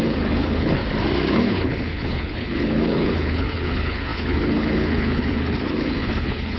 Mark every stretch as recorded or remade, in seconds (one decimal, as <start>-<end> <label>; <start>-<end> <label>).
0.0-0.8 remade; 0.8-1.3 recorded; 1.3-6.6 remade